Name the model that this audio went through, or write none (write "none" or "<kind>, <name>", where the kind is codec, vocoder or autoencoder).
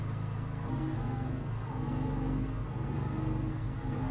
codec, SNAC